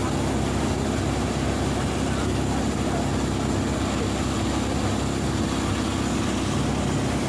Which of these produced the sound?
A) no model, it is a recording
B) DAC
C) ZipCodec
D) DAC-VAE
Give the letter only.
A